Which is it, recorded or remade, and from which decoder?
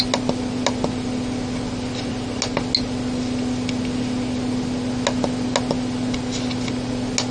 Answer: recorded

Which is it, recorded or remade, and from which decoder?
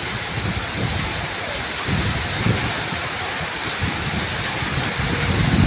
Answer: recorded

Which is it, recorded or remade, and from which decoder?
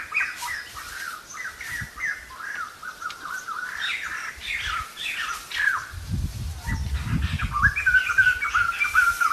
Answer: recorded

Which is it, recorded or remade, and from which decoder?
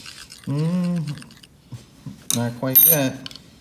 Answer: recorded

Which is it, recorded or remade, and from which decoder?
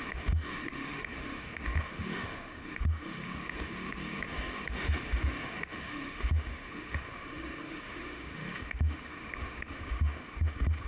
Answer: remade, autoencoder, DAC-VAE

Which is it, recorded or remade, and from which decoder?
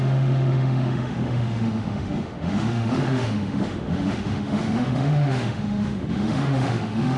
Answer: remade, autoencoder, DAC-VAE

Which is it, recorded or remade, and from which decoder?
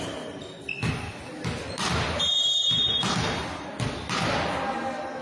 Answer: recorded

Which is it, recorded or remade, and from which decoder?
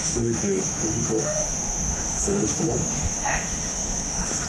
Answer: remade, autoencoder, DAC-VAE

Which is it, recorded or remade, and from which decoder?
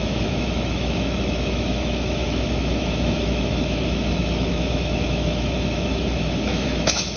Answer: remade, autoencoder, DAC-VAE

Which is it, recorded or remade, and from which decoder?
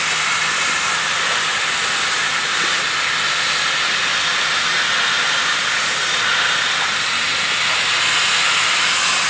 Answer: recorded